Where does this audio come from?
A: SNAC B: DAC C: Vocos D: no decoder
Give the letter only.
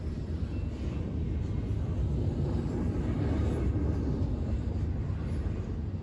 D